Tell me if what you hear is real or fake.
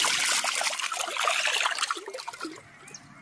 real